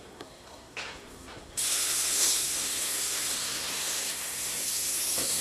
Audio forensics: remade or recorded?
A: remade